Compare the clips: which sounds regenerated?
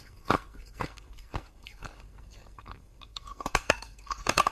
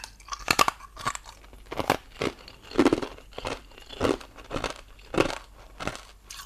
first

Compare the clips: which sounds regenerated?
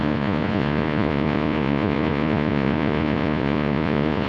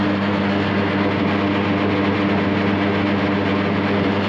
first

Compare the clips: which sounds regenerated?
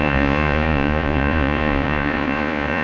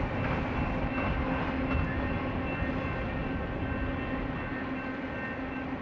first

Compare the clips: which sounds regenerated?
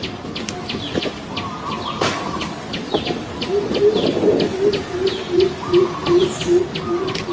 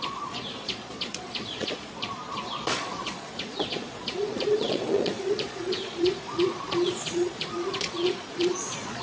second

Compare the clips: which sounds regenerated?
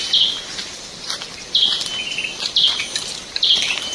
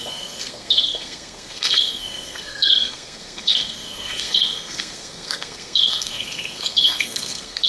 second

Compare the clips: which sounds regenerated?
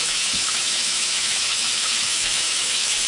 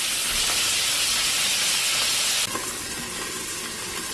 first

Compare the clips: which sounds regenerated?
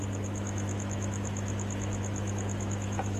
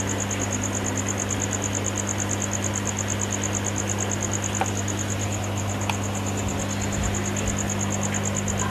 first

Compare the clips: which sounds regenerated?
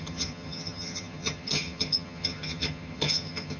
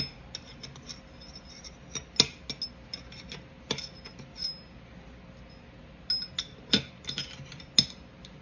first